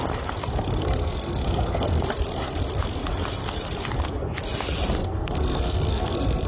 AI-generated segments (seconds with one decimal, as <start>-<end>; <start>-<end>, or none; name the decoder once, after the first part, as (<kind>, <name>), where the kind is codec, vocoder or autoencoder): 0.8-2.0 (codec, SNAC); 5.0-6.5